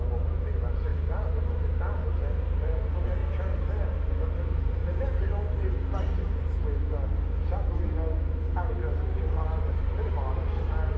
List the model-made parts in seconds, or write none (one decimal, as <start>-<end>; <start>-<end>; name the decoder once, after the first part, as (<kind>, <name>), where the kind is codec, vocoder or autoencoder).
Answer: none

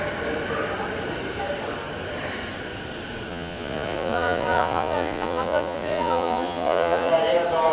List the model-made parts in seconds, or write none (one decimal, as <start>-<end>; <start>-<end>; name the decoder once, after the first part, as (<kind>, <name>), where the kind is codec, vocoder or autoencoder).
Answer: 3.3-7.1 (vocoder, Vocos)